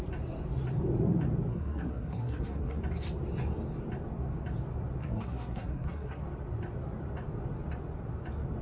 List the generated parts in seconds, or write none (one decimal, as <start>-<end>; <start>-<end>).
1.5-2.8; 5.0-6.2